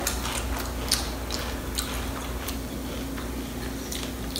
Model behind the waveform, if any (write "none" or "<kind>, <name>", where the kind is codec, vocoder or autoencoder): none